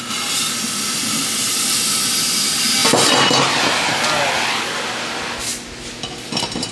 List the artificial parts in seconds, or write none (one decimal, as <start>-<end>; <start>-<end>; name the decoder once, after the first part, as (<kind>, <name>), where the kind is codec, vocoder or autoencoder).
none